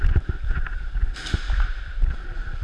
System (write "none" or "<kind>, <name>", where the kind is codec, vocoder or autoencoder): none